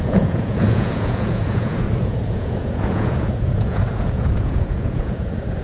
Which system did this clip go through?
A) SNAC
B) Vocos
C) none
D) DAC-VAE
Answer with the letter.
B